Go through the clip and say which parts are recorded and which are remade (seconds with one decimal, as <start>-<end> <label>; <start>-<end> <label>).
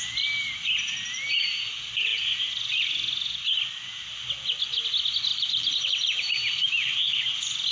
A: 0.0-5.3 recorded; 5.3-7.2 remade; 7.2-7.7 recorded